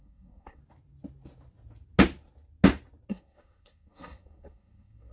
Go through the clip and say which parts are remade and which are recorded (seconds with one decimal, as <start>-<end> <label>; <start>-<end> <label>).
0.0-0.6 remade; 0.6-3.1 recorded; 3.1-5.1 remade